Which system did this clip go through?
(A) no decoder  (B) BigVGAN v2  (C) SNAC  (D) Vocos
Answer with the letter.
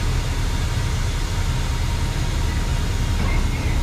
A